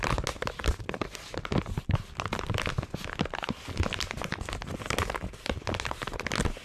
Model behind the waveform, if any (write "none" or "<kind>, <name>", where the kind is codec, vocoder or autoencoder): none